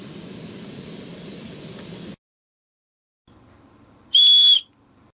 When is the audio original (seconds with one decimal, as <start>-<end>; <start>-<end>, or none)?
0.0-5.1